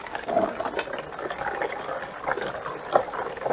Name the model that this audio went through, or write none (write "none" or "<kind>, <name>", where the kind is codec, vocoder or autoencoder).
none